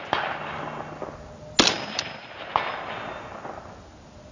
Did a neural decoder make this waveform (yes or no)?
no